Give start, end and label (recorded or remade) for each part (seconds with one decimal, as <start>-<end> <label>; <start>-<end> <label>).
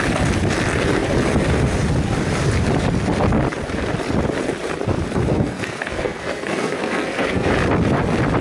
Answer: 0.0-5.3 recorded; 5.3-7.5 remade; 7.5-8.4 recorded